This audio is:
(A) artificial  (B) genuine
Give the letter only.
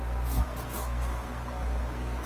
A